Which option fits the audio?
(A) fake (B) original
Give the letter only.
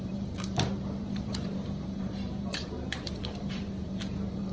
A